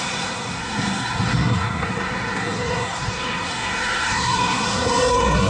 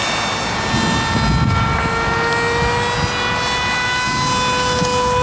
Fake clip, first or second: first